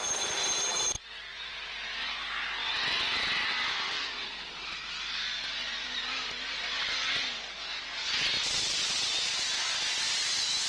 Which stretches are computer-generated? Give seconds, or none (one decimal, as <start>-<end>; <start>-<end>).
0.0-1.5; 2.6-7.8; 8.4-9.6